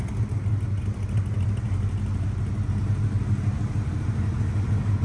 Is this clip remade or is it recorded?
recorded